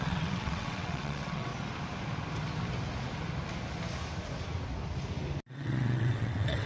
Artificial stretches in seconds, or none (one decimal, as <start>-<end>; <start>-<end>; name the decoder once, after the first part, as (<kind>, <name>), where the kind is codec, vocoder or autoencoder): 0.0-1.5 (vocoder, WaveNeXt); 5.5-6.7